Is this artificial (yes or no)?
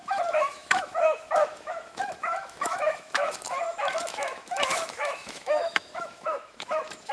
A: yes